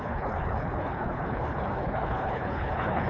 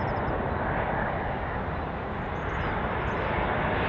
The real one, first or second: second